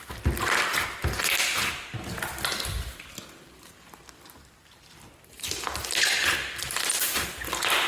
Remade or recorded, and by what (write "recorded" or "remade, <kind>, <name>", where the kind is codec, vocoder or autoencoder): recorded